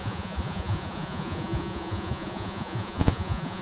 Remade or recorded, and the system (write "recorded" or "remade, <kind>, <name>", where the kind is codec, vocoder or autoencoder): remade, vocoder, Vocos